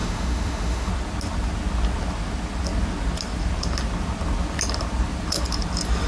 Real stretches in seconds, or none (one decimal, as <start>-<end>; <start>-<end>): 0.9-6.1